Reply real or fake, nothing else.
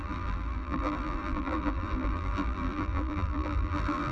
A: fake